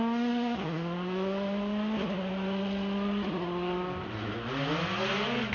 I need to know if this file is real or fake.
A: real